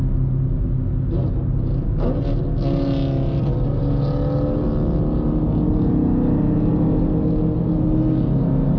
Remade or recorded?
recorded